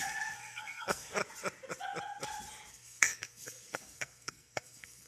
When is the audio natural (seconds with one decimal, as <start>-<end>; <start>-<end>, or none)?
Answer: 1.2-2.7